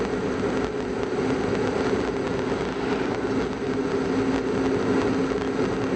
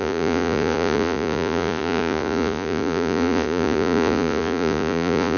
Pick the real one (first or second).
first